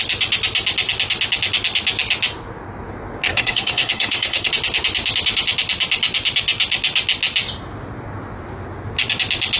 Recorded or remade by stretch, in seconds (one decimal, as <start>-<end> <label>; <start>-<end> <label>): 0.0-3.3 recorded; 3.3-4.5 remade; 4.5-9.6 recorded